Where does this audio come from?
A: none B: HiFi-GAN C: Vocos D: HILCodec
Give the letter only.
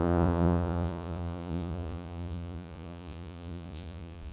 C